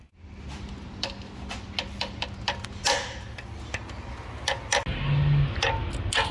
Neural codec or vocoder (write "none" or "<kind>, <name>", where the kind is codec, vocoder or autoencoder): none